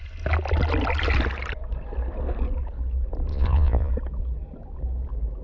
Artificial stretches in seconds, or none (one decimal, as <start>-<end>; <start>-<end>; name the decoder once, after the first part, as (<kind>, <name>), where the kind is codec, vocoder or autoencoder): 3.3-3.9 (vocoder, Vocos)